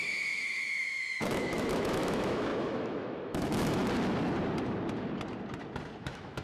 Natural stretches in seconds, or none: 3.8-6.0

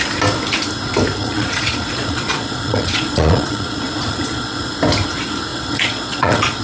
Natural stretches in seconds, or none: 0.0-1.2; 4.7-5.5

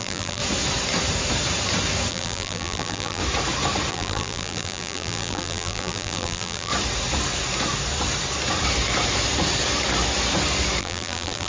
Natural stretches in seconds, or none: 0.4-2.1; 3.2-3.9; 6.7-10.8

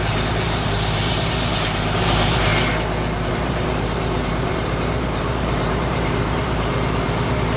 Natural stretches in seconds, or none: 2.5-3.3

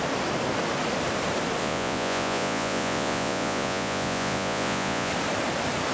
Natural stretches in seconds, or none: 0.0-1.6; 5.1-5.9

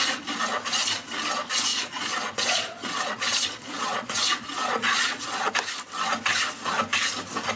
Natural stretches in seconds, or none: 0.0-1.7; 5.5-7.6

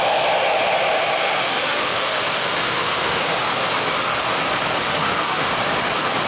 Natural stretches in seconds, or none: 0.0-1.2; 3.2-4.8; 5.5-6.3